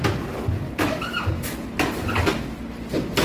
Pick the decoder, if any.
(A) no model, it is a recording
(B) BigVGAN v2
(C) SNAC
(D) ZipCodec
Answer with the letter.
A